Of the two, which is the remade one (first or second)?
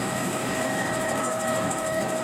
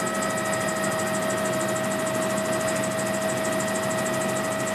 first